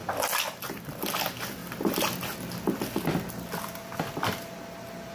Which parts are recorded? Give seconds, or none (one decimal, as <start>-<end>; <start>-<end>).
0.0-5.1